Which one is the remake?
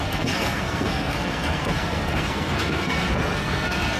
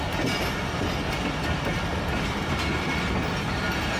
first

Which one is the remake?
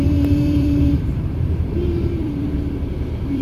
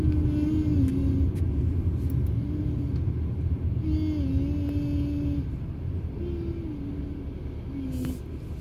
first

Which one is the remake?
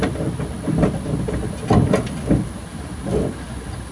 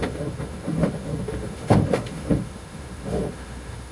second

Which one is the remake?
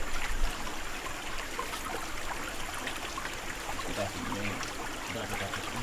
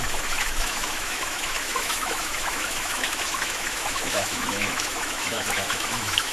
second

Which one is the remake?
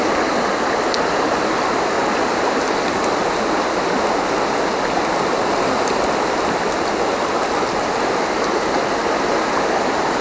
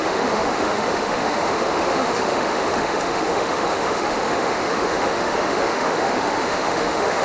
second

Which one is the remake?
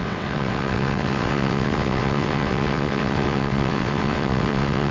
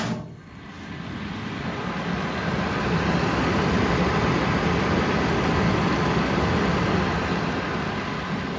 first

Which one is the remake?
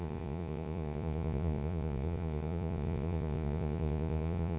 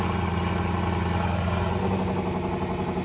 first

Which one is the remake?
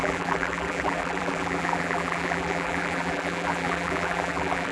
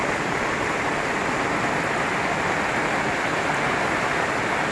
first